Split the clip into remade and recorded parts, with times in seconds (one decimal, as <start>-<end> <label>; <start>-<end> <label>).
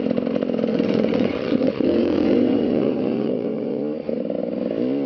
0.0-0.7 recorded; 0.7-3.8 remade; 3.8-5.1 recorded